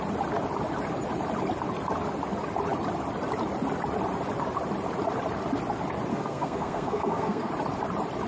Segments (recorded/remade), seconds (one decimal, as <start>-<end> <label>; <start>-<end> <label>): 0.0-6.1 recorded; 6.1-7.5 remade; 7.5-8.3 recorded